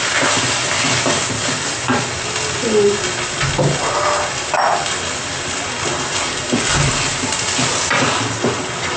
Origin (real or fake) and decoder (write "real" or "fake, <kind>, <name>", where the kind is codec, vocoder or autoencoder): real